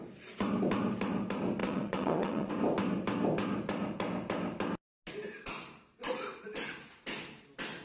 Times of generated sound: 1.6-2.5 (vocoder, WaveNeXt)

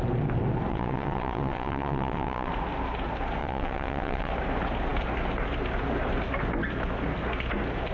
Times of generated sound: 0.7-2.5 (vocoder, WaveNeXt); 3.4-4.3